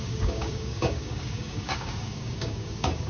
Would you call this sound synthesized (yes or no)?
yes